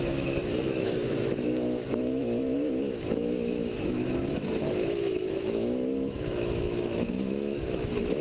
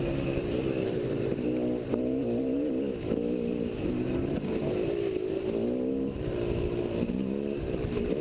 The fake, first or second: first